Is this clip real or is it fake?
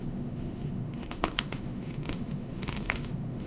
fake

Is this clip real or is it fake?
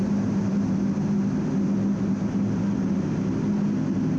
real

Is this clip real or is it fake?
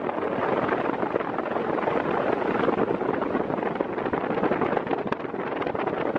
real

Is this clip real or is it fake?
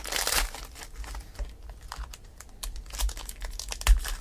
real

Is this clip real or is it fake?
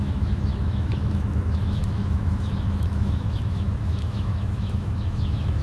fake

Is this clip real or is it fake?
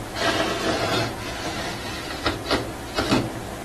real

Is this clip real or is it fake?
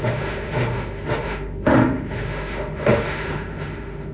fake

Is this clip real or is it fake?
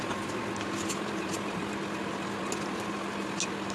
real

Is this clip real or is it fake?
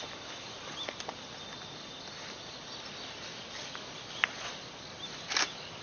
real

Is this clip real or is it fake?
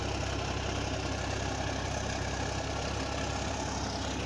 real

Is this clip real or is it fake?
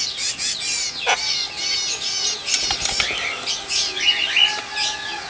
real